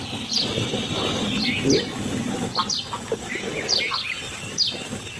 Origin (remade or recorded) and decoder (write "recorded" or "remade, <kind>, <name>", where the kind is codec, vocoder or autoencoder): recorded